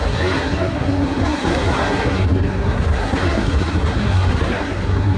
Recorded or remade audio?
remade